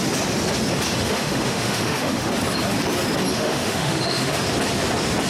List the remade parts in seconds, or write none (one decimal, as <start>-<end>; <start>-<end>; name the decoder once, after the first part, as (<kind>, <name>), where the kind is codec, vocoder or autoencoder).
1.0-2.3 (autoencoder, DAC-VAE); 3.3-4.4